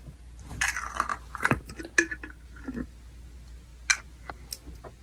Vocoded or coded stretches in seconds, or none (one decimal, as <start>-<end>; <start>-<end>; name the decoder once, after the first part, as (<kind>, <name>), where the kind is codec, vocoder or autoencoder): 1.1-1.7 (vocoder, BigVGAN v2)